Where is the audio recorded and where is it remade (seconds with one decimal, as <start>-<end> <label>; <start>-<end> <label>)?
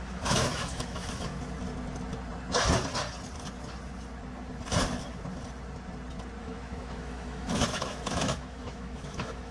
0.0-1.3 remade; 1.3-6.4 recorded; 6.4-9.5 remade